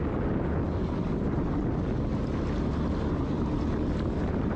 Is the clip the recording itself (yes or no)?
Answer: yes